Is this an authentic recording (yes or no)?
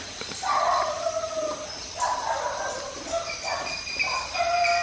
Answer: yes